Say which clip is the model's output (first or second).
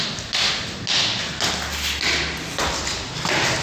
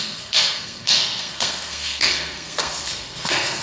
second